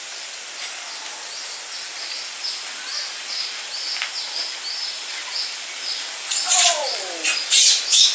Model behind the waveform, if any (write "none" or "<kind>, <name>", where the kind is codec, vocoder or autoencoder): none